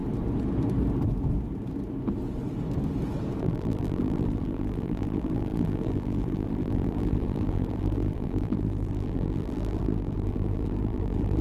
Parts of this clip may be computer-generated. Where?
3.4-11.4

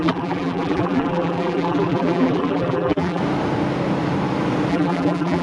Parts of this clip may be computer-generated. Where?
0.0-3.2; 4.7-5.4

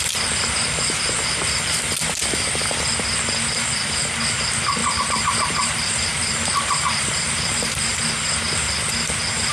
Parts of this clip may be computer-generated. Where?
4.8-8.0

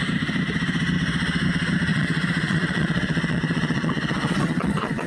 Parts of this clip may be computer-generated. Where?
1.9-5.1

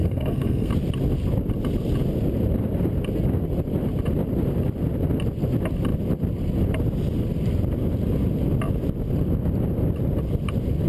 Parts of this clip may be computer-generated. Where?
0.0-0.7

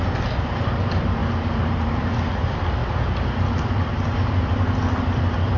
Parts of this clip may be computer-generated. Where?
none